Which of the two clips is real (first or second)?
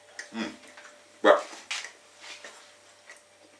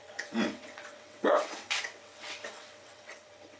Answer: first